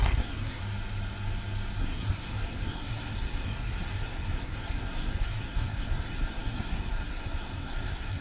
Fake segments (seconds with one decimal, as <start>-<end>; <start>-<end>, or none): 0.0-0.6; 1.8-8.2